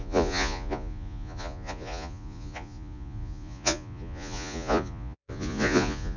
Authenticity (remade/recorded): remade